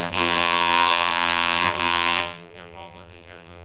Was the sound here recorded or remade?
remade